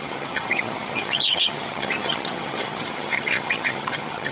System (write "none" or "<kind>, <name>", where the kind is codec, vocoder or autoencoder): vocoder, HiFi-GAN